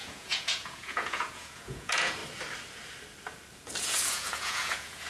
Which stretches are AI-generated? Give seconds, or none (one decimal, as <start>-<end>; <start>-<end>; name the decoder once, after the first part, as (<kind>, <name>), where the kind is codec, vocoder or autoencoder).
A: 0.0-2.2 (vocoder, Vocos); 3.8-5.1